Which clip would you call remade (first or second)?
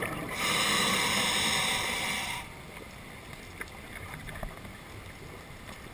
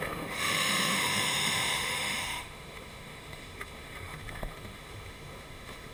second